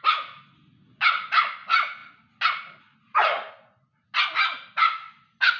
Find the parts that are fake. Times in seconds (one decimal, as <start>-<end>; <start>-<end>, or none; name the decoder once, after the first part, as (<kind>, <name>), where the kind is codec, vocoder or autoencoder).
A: none